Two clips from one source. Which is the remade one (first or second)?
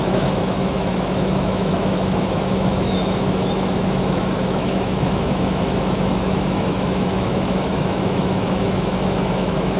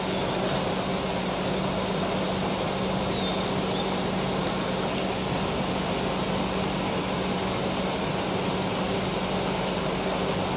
first